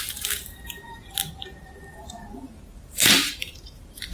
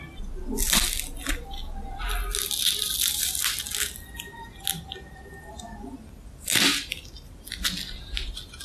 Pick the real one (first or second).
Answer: second